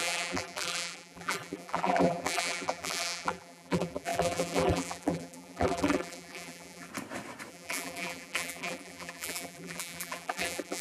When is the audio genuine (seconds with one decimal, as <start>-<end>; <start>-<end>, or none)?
6.9-7.5